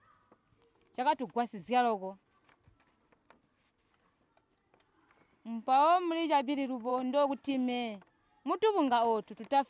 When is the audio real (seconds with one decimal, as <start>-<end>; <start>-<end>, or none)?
0.0-9.7